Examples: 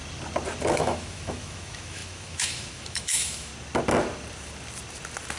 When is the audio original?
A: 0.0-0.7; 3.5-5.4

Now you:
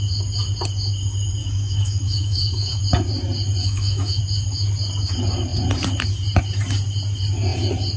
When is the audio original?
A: 0.0-1.4; 2.8-3.6; 4.2-8.0